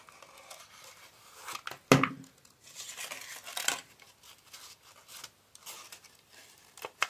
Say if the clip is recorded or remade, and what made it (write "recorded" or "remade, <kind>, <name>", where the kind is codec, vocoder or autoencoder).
recorded